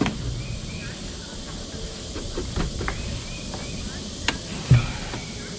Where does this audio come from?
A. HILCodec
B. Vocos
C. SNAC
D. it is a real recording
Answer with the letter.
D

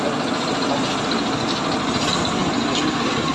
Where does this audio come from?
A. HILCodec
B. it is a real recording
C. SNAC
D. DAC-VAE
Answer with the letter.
B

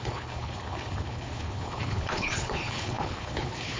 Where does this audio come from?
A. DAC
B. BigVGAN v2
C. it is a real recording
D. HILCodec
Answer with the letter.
D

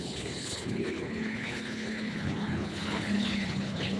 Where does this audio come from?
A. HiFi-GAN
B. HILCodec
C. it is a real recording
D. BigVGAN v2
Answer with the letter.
B